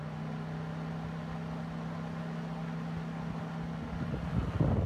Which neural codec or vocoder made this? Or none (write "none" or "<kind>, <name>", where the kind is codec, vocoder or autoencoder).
none